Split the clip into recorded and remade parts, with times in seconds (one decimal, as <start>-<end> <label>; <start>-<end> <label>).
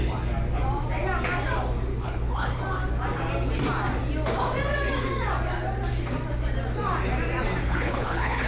0.0-1.9 recorded; 1.9-2.6 remade; 2.6-7.6 recorded; 7.6-8.5 remade